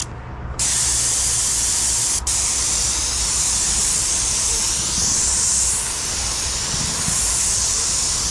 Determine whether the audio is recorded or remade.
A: recorded